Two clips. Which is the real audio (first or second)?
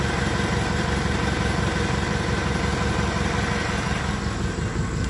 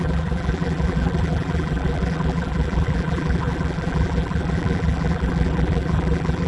first